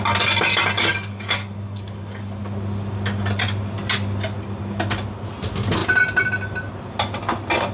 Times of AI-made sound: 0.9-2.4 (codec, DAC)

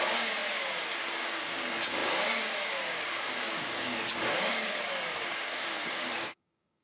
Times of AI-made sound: 0.0-6.8 (codec, DAC)